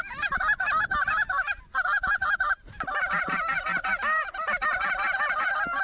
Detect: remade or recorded recorded